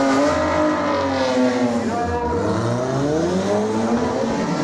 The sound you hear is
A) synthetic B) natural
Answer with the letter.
B